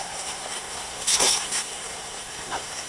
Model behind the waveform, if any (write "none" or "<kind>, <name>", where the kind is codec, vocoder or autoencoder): codec, SNAC